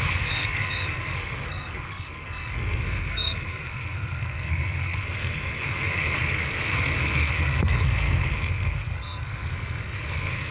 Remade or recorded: remade